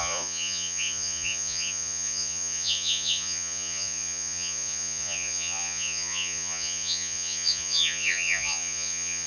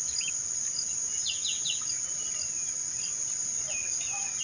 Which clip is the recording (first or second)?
second